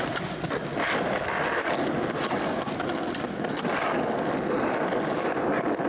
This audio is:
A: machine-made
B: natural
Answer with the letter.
B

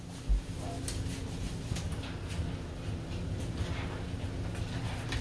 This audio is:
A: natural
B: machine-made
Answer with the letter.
A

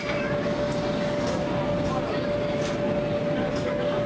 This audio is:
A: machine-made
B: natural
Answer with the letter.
B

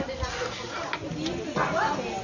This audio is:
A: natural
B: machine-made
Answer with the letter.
A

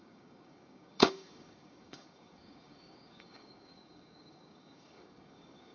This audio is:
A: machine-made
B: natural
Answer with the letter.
A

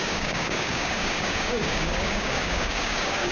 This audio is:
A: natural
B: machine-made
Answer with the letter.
B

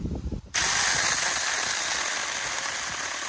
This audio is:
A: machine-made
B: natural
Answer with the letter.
B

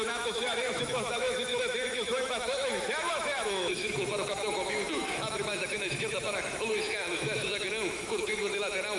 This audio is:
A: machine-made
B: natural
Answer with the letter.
A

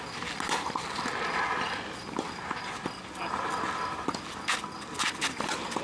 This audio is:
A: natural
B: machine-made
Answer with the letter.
A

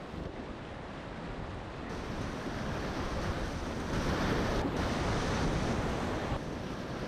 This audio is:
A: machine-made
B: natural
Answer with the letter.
B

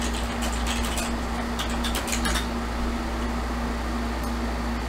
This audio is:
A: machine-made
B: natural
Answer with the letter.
B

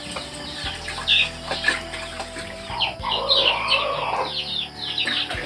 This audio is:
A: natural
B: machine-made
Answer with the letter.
A